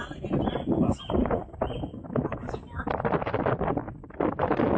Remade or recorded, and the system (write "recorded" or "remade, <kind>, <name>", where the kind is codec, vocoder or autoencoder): recorded